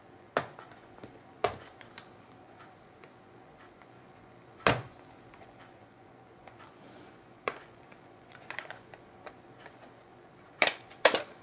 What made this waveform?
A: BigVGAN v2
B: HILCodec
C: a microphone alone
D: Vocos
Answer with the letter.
D